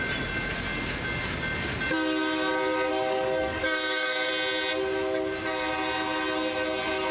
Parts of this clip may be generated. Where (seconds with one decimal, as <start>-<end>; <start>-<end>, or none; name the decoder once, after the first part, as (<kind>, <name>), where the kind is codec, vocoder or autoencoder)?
2.9-4.3 (codec, DAC)